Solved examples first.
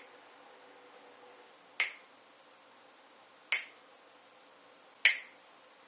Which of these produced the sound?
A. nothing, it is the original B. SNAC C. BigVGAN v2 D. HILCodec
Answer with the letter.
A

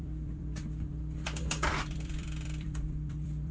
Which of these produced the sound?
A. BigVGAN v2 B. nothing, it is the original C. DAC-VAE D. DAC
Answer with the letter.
A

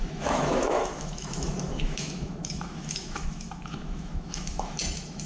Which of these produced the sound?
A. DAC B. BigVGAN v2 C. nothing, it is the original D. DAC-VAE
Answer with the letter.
D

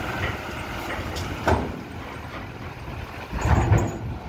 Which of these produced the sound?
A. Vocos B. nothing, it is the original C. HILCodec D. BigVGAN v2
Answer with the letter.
B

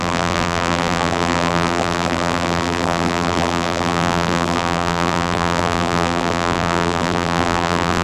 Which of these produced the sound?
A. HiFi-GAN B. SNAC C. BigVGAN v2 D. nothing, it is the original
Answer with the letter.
C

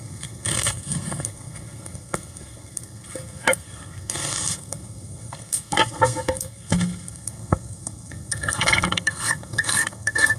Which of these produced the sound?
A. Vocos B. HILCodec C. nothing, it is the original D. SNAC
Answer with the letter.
D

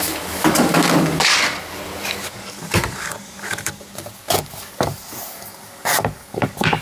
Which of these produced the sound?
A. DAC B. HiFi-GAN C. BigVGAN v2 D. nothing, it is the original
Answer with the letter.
A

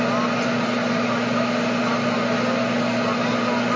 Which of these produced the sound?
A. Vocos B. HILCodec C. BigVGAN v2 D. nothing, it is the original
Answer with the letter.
D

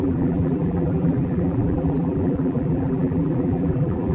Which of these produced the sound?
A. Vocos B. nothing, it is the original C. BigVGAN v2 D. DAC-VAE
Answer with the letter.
C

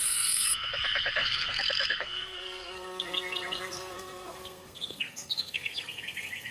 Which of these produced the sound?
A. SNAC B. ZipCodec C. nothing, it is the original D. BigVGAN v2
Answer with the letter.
A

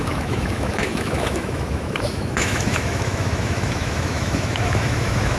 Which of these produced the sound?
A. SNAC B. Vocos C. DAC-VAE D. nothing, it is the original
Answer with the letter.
C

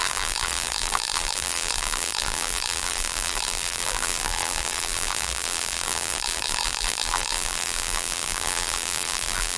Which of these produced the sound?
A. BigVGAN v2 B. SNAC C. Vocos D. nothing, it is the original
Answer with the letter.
A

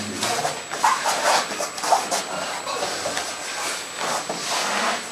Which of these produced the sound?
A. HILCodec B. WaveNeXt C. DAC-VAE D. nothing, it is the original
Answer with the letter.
D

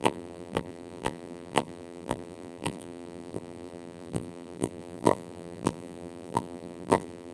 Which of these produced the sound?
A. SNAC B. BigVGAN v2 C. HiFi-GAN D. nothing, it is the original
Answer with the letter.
B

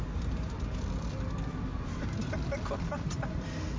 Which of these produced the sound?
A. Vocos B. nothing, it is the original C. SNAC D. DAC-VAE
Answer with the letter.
B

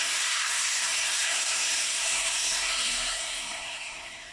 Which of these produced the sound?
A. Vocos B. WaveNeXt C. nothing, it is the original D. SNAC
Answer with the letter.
D